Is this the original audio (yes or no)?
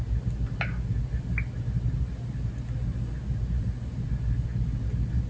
yes